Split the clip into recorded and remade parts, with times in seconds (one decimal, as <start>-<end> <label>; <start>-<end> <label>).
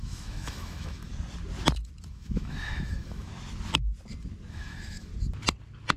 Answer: 0.0-1.1 remade; 1.1-2.1 recorded; 2.1-3.3 remade; 3.3-4.5 recorded; 4.5-5.1 remade; 5.1-6.0 recorded